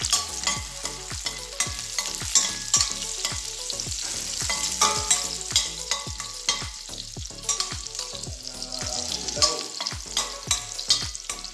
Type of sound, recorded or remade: recorded